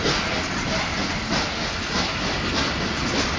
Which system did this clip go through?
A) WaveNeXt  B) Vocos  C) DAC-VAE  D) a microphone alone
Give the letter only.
D